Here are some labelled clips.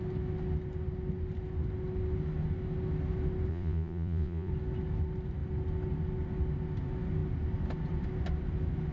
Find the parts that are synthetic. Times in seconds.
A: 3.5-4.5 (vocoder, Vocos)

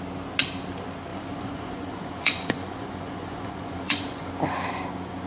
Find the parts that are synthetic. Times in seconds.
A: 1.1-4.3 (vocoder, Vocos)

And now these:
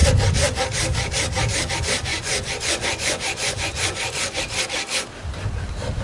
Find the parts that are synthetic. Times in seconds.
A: 2.1-4.4 (vocoder, Vocos)

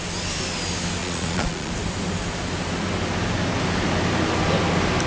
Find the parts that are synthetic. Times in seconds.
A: 1.0-1.7 (vocoder, Vocos)

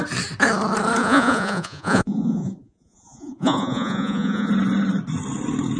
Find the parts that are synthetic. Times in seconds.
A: 1.0-4.5 (vocoder, Vocos)

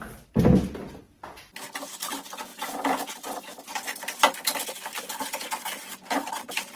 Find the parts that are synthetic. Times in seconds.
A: 2.5-3.1 (vocoder, Vocos)

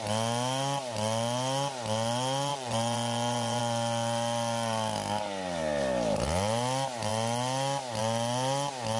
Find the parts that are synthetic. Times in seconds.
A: 2.5-3.6 (vocoder, Vocos)